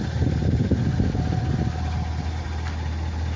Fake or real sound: real